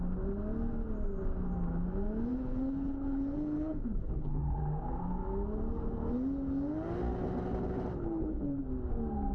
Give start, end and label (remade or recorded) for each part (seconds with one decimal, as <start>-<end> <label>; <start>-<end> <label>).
0.0-2.3 recorded; 2.3-4.6 remade; 4.6-7.9 recorded; 7.9-8.6 remade; 8.6-9.3 recorded